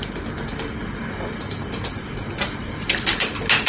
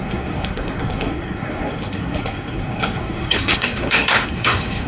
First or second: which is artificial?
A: second